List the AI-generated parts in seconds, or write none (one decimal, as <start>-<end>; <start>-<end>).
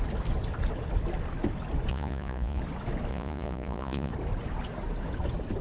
1.9-2.6; 3.1-4.1